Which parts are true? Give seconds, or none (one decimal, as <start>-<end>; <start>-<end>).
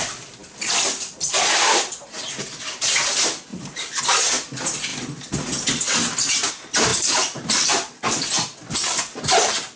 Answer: 0.0-0.4; 1.3-3.5; 4.0-6.9; 9.0-9.8